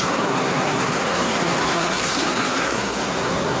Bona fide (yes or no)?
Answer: no